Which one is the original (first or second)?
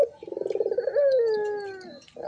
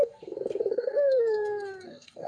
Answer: first